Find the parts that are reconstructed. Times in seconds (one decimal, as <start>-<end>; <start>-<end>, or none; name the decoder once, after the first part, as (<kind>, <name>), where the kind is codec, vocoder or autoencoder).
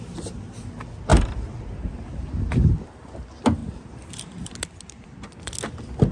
1.1-2.7 (vocoder, BigVGAN v2); 3.6-4.5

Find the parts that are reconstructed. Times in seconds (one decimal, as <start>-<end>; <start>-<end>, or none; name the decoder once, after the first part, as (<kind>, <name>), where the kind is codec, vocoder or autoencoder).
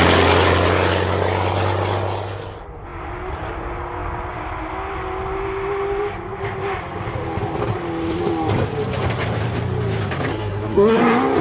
10.3-11.0 (codec, SNAC)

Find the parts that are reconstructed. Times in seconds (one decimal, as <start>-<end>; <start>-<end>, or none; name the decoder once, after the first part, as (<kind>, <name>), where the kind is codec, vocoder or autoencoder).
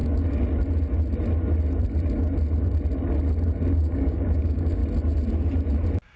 3.7-4.8 (codec, DAC)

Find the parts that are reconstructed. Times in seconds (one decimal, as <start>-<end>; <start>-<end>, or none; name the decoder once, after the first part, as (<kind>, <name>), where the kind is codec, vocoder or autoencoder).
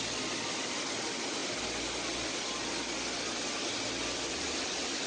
none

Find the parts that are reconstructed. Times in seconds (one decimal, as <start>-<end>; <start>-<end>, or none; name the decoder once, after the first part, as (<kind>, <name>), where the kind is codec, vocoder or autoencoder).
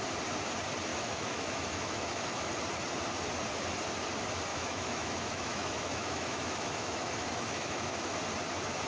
0.9-2.5 (autoencoder, DAC-VAE); 4.5-8.2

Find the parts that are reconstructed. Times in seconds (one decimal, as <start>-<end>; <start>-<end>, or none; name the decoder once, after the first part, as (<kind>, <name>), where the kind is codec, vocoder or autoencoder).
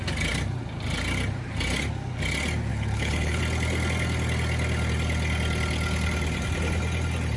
2.7-3.4 (codec, HILCodec)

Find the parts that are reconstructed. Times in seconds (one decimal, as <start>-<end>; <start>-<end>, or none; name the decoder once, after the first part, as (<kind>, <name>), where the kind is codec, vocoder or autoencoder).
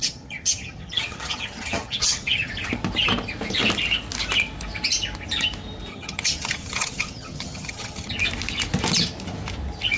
0.0-2.5 (vocoder, HiFi-GAN); 5.9-8.1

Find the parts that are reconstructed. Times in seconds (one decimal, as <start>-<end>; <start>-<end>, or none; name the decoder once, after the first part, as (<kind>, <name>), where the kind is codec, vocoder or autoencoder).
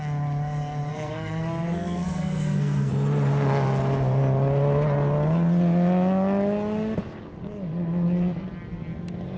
0.9-2.9 (codec, SNAC)